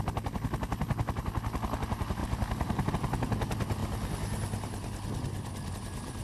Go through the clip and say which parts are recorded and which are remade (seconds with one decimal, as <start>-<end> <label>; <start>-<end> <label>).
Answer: 0.0-2.2 recorded; 2.2-2.9 remade; 2.9-6.2 recorded